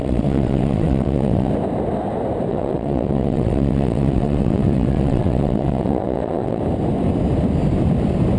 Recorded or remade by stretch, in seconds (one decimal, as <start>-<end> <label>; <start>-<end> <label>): 0.0-1.5 remade; 1.5-2.5 recorded; 2.5-6.6 remade; 6.6-8.4 recorded

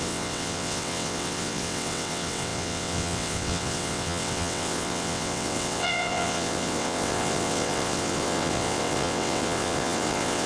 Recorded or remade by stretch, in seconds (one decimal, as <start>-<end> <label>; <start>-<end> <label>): 0.0-10.5 remade

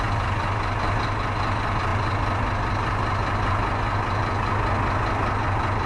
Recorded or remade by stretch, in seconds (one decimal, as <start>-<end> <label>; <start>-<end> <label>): 0.0-5.9 recorded

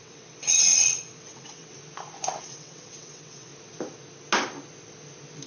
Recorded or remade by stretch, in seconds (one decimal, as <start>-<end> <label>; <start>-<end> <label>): 0.0-1.7 remade; 1.7-2.4 recorded; 2.4-3.5 remade; 3.5-5.5 recorded

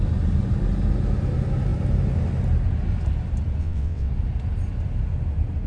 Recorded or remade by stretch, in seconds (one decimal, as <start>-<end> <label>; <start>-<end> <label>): 0.0-3.6 recorded; 3.6-4.1 remade; 4.1-5.7 recorded